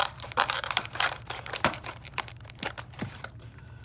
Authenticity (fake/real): fake